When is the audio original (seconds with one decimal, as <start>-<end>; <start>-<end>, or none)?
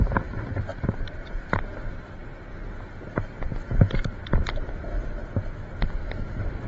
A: 0.7-3.5; 5.2-6.0